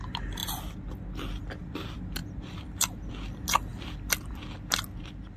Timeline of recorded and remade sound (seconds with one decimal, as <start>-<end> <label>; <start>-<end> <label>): 0.0-2.2 recorded; 2.2-3.1 remade; 3.1-5.4 recorded